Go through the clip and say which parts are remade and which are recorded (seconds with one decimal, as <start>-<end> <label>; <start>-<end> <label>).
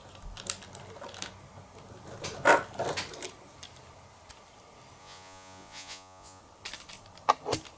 0.0-5.0 recorded; 5.0-6.4 remade; 6.4-7.8 recorded